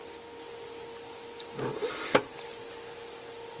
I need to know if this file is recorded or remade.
recorded